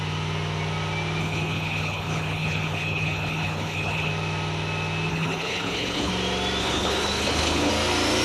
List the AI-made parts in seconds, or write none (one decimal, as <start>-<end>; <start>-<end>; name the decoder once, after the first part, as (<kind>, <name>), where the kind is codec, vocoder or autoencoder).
1.2-4.1 (codec, HILCodec); 5.1-6.1; 6.6-7.7